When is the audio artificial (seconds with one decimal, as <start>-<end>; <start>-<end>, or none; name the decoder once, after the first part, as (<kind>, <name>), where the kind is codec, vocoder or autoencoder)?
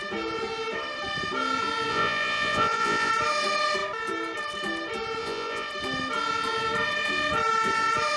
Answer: 1.9-3.1 (vocoder, Vocos); 5.2-5.7